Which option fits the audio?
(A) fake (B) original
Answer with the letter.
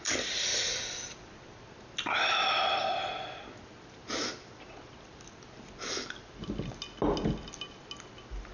B